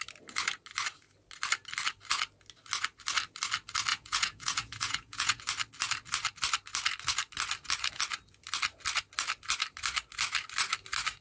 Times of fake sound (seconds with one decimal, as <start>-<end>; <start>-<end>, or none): 3.9-5.4